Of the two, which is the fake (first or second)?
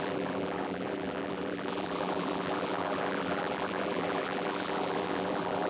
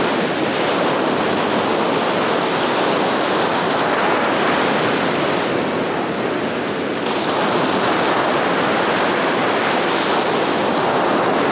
first